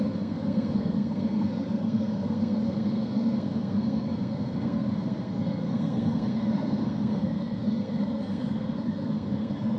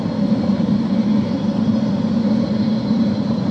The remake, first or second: first